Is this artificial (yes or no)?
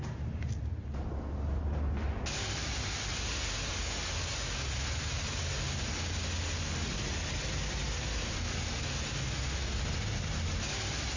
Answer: no